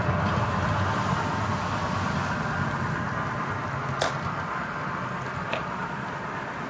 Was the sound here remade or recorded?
recorded